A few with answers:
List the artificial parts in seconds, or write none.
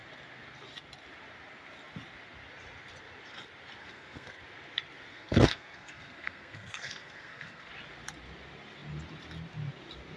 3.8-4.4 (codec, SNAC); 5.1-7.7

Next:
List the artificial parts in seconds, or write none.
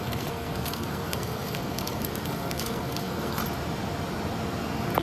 0.0-3.4 (codec, SNAC)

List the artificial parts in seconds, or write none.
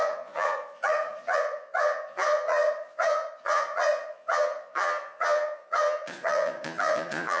0.0-7.4 (vocoder, Vocos)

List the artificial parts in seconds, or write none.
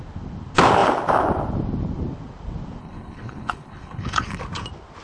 2.8-4.4 (codec, HILCodec)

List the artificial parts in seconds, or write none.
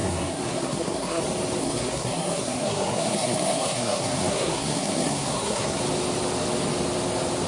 0.0-1.2 (codec, SNAC); 1.6-5.8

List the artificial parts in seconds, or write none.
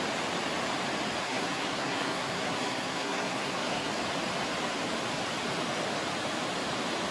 1.2-3.9 (codec, SNAC)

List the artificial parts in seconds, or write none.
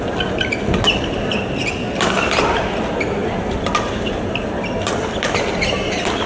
none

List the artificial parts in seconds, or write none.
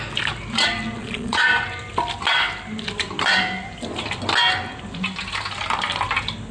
1.0-1.5 (vocoder, Vocos)